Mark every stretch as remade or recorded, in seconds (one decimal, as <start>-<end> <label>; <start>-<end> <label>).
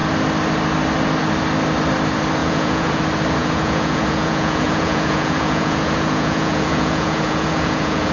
0.0-2.4 recorded; 2.4-3.0 remade; 3.0-3.4 recorded; 3.4-8.1 remade